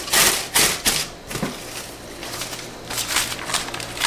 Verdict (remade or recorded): recorded